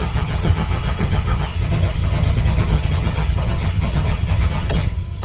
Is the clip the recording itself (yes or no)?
no